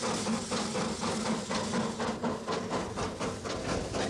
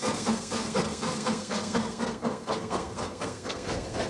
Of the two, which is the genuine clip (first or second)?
first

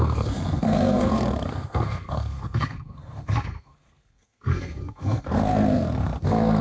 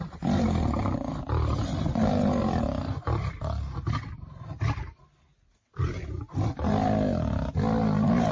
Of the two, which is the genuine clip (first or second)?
second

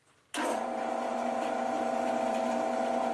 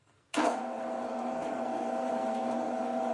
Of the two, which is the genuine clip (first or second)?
first